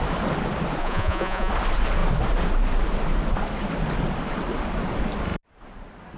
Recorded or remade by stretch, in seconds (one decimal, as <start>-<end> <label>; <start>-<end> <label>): 0.0-0.8 recorded; 0.8-1.5 remade; 1.5-6.2 recorded